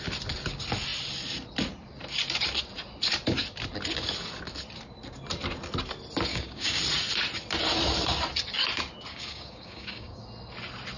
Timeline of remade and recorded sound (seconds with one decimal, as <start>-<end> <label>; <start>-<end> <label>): 0.0-6.3 recorded; 6.3-6.8 remade; 6.8-9.1 recorded; 9.1-10.2 remade; 10.2-11.0 recorded